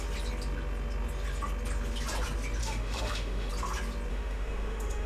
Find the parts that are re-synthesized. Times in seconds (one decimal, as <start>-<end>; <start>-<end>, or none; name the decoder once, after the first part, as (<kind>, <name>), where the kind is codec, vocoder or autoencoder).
2.6-3.5 (autoencoder, DAC-VAE); 4.1-5.1